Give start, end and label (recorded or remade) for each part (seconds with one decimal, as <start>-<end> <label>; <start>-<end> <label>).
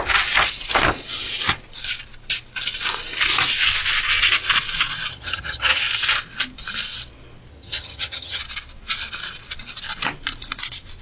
0.0-5.1 recorded; 5.1-5.8 remade; 5.8-7.5 recorded; 7.5-8.4 remade; 8.4-11.0 recorded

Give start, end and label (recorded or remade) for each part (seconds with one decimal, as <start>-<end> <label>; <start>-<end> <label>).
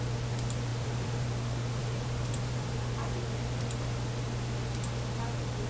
0.0-0.7 recorded; 0.7-1.3 remade; 1.3-1.8 recorded; 1.8-2.8 remade; 2.8-5.7 recorded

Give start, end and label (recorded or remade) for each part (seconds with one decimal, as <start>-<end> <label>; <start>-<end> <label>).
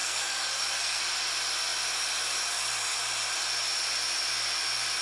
0.0-1.0 remade; 1.0-5.0 recorded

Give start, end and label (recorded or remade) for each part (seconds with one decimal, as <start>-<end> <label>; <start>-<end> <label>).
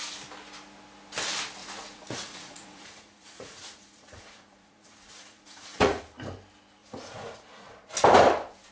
0.0-1.6 recorded; 1.6-6.0 remade; 6.0-6.8 recorded; 6.8-7.9 remade; 7.9-8.7 recorded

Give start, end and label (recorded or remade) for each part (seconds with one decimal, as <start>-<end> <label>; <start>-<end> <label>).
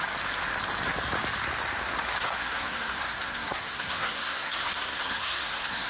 0.0-2.2 recorded; 2.2-5.9 remade